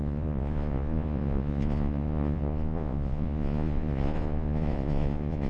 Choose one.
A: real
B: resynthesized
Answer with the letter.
B